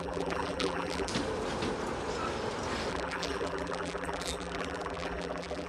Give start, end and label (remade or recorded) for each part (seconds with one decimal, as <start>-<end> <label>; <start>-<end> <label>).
0.0-1.1 remade; 1.1-2.9 recorded; 2.9-5.7 remade